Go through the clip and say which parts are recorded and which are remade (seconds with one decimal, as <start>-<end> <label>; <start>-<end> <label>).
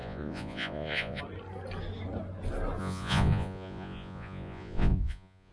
0.0-1.2 remade; 1.2-2.8 recorded; 2.8-5.5 remade